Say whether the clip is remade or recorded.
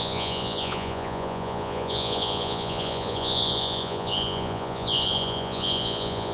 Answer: remade